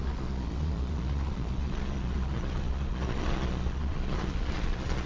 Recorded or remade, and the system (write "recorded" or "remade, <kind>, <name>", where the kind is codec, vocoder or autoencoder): remade, vocoder, Vocos